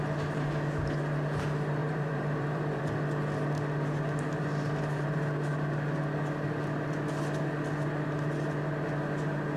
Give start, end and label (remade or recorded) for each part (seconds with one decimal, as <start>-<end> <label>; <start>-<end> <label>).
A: 0.0-1.8 recorded; 1.8-2.8 remade; 2.8-9.6 recorded